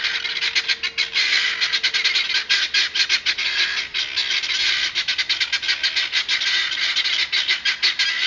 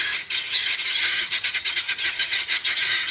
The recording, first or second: first